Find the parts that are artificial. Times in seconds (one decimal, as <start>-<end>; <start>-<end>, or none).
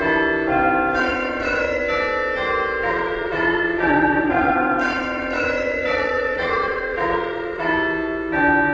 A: 1.0-1.8; 2.9-7.7